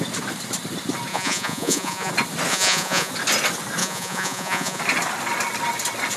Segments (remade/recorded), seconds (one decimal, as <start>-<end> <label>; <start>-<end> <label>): 0.0-1.1 recorded; 1.1-2.1 remade; 2.1-2.5 recorded; 2.5-3.1 remade; 3.1-3.8 recorded; 3.8-4.8 remade; 4.8-6.2 recorded